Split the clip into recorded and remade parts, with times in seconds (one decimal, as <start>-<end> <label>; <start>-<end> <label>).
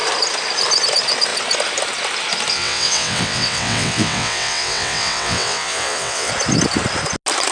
0.0-2.5 recorded; 2.5-6.3 remade; 6.3-7.5 recorded